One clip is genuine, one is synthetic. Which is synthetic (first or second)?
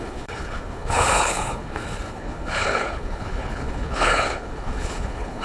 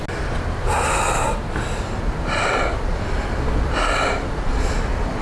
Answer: first